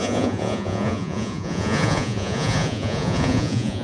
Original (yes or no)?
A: no